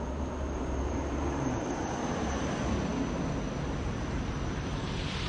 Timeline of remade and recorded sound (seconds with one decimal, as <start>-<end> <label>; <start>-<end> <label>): 0.0-2.9 remade; 2.9-4.6 recorded; 4.6-5.3 remade